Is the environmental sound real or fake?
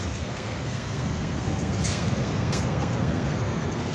fake